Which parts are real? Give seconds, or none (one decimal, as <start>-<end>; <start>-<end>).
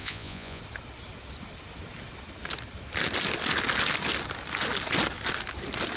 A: 0.6-6.0